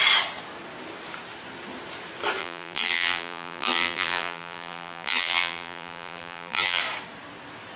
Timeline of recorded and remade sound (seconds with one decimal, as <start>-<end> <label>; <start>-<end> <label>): 0.0-2.4 recorded; 2.4-6.8 remade; 6.8-7.8 recorded